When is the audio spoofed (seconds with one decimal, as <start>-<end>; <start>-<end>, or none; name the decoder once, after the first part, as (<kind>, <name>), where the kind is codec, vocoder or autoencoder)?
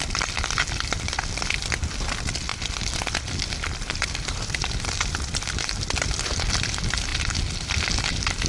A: 2.5-6.4 (vocoder, BigVGAN v2)